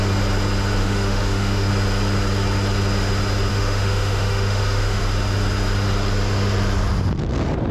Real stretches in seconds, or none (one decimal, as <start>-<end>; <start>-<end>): 0.0-0.8; 1.7-3.5; 5.0-7.7